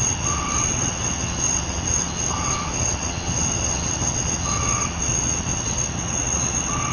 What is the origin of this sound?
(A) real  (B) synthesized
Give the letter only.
B